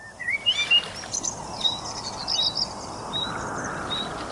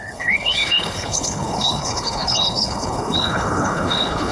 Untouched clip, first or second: first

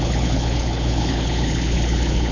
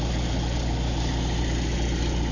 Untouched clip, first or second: second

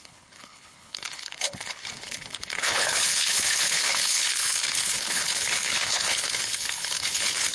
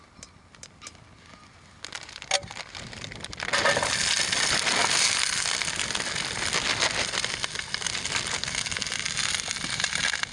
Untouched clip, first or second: second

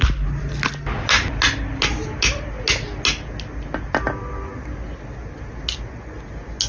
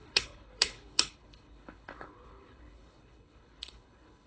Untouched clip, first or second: first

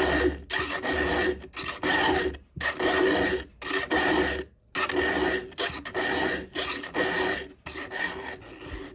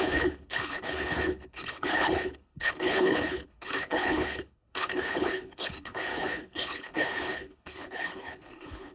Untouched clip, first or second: first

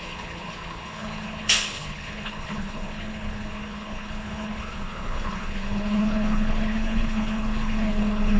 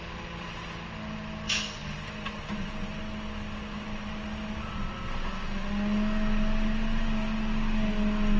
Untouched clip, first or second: second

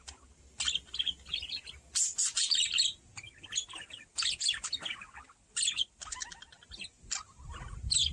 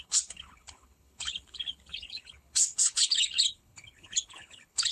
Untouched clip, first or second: first